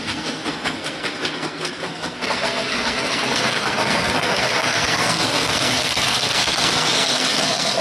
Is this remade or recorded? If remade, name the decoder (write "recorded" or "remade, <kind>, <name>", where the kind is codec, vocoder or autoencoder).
remade, codec, SNAC